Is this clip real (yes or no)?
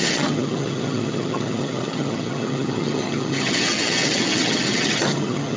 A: no